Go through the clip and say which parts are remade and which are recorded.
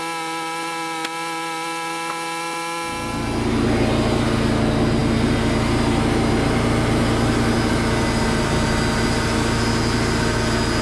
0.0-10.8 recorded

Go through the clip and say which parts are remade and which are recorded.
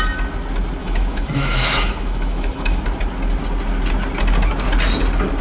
0.0-0.8 recorded; 0.8-2.8 remade; 2.8-5.4 recorded